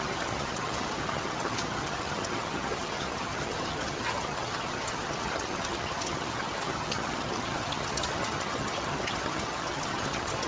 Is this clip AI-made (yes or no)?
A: yes